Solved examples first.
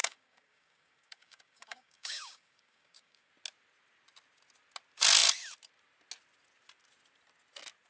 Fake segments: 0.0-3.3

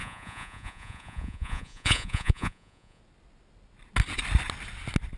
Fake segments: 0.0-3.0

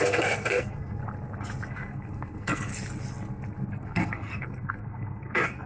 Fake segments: 0.0-1.0; 1.7-2.7; 3.7-5.7

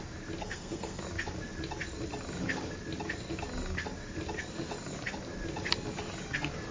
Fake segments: 0.4-1.0

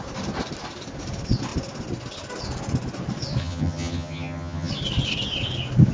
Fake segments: 3.4-4.7

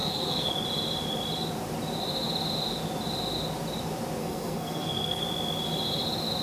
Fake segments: 0.0-0.5; 4.2-5.2

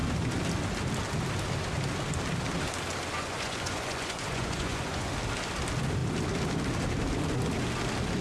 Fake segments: 3.2-5.1